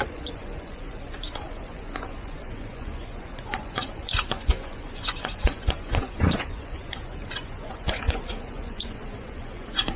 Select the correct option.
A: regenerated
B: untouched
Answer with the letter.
A